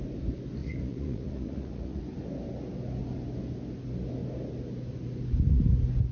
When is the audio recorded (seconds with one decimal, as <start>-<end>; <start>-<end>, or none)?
0.0-0.6; 2.0-6.1